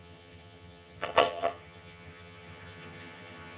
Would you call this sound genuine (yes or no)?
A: no